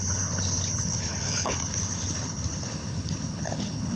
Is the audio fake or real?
fake